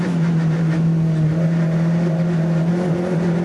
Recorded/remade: recorded